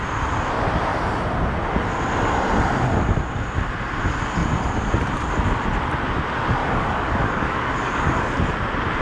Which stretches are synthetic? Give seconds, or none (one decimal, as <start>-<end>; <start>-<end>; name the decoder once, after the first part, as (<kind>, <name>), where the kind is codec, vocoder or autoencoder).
6.6-8.3 (codec, DAC)

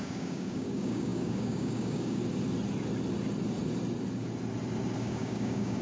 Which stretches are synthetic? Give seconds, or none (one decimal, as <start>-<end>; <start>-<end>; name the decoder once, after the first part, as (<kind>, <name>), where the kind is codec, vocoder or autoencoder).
0.0-2.2 (codec, DAC); 5.0-5.8